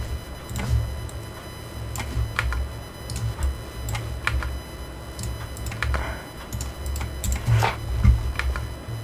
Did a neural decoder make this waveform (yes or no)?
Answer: no